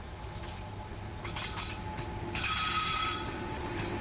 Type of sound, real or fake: real